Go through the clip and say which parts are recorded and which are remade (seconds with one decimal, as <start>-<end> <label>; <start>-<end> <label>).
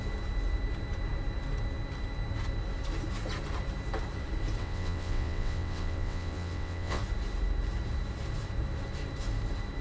0.0-4.6 recorded; 4.6-7.0 remade; 7.0-9.8 recorded